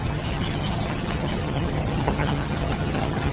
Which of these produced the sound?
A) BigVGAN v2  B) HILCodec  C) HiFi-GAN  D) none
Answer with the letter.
C